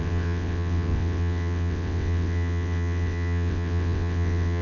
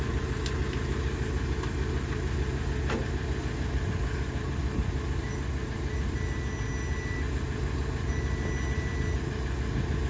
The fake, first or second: first